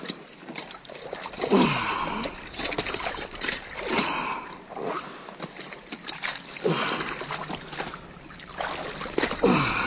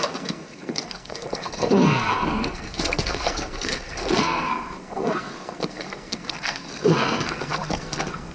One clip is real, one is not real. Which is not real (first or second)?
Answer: second